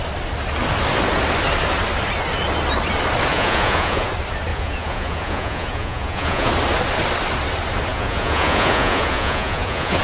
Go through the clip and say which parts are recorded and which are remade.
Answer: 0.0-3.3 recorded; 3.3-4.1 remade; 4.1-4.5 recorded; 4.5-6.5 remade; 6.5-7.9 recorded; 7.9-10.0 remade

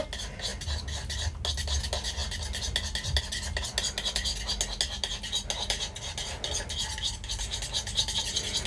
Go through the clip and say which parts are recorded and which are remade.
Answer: 0.0-8.7 recorded

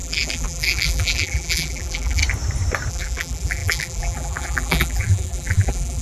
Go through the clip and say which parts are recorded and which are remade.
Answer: 0.0-2.2 remade; 2.2-2.9 recorded; 2.9-6.0 remade